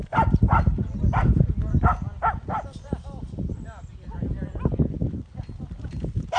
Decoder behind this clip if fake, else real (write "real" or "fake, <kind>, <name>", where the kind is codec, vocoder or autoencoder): real